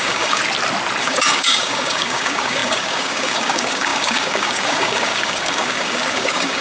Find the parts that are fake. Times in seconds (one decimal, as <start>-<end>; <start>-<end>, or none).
0.0-0.4; 1.0-6.6